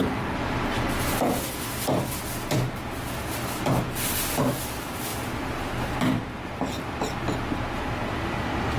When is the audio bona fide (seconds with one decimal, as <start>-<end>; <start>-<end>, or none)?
0.0-5.1; 7.2-8.8